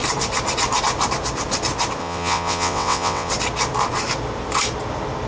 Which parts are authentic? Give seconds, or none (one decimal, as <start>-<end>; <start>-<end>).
0.0-2.0; 3.3-5.3